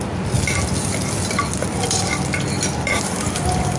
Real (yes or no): yes